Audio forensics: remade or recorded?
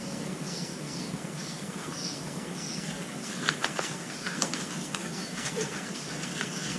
remade